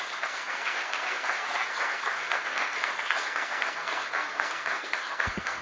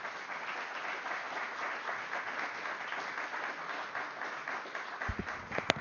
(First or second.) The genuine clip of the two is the second